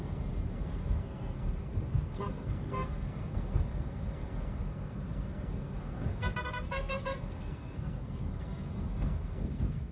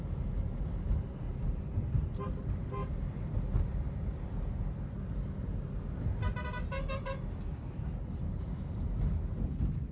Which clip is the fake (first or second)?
first